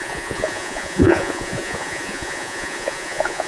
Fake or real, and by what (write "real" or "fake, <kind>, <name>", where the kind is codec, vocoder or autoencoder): fake, vocoder, Vocos